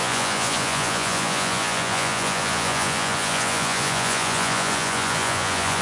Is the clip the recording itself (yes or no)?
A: no